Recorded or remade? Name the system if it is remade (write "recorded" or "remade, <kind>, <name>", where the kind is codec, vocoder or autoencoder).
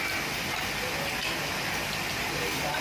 recorded